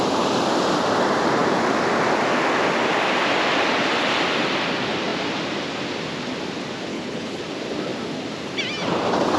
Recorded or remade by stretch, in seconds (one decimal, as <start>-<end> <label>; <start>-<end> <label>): 0.0-6.9 recorded; 6.9-7.4 remade; 7.4-9.4 recorded